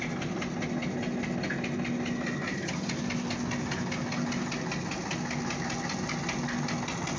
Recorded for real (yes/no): yes